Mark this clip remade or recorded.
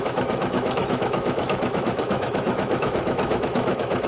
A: remade